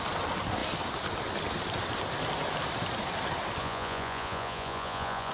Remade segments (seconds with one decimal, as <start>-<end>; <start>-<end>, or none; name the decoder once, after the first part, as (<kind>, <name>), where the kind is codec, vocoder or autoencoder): 3.6-5.3 (vocoder, Vocos)

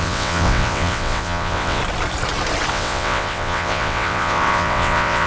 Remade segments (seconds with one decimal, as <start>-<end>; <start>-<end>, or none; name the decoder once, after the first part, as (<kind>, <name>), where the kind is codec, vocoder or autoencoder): 0.0-1.8 (vocoder, WaveNeXt); 2.7-5.3

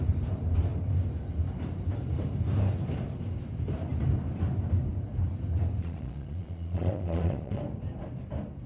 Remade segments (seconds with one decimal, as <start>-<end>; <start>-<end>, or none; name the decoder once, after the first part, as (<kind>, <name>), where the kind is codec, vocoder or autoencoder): 5.8-7.6 (vocoder, Vocos)

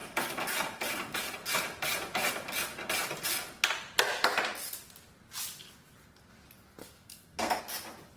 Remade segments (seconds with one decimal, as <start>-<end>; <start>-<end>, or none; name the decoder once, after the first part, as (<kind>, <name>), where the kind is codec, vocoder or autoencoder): 6.8-7.6 (codec, SNAC)